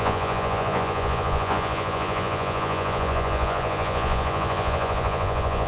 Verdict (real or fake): fake